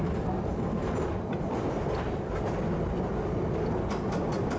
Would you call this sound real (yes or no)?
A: yes